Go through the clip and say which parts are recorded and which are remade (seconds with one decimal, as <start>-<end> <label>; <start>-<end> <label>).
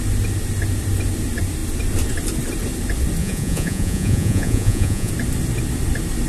0.0-3.2 recorded; 3.2-5.1 remade; 5.1-6.3 recorded